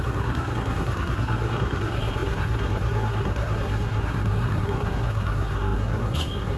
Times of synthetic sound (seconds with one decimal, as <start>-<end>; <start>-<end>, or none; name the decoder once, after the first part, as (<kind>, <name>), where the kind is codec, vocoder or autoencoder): 0.0-6.6 (codec, SNAC)